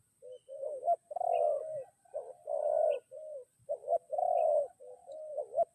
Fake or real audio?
real